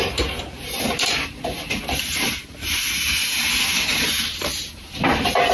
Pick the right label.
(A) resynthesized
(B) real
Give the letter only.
A